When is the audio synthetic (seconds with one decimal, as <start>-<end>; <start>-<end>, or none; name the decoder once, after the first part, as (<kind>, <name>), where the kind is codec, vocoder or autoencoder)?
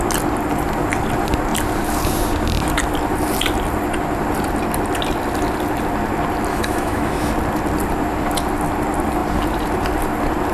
6.5-7.3 (autoencoder, DAC-VAE)